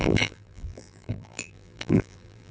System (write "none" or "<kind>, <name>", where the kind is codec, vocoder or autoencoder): vocoder, BigVGAN v2